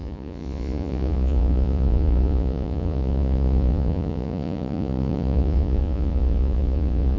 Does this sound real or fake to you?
fake